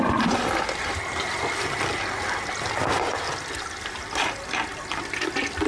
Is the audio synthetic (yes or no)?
no